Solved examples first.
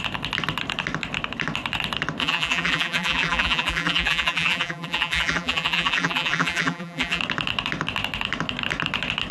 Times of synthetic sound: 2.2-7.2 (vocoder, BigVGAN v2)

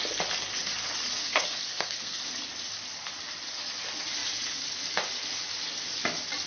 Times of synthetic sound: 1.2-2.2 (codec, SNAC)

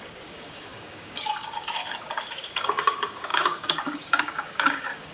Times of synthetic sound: 0.0-5.1 (codec, DAC)